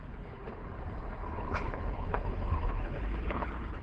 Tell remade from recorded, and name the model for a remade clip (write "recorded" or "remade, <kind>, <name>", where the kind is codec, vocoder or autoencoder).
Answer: remade, codec, HILCodec